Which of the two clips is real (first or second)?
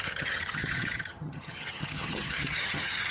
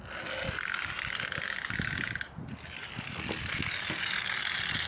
second